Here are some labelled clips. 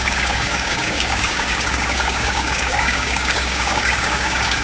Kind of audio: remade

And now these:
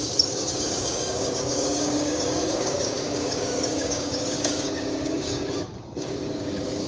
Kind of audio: remade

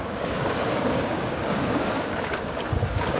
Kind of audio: remade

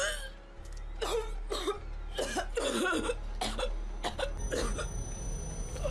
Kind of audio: recorded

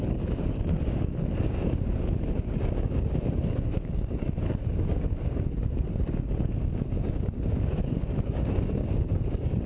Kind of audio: remade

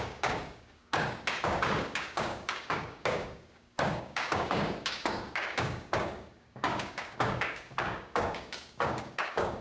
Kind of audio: remade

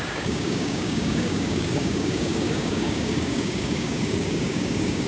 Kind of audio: remade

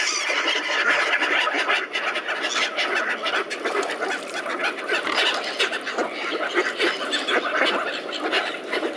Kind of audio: recorded